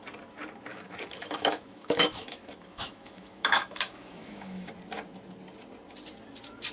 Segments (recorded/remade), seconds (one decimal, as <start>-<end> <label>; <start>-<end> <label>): 0.0-0.7 recorded; 0.7-4.7 remade; 4.7-6.7 recorded